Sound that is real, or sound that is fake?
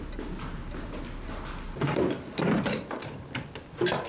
real